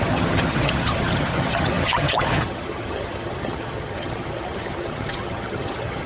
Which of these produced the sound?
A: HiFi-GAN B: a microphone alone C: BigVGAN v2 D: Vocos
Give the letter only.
A